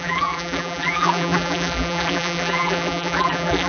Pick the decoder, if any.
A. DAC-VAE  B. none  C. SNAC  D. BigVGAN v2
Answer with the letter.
D